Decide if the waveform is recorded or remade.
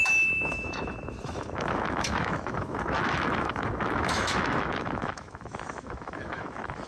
remade